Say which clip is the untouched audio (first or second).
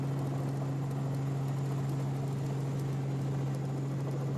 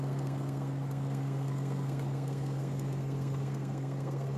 first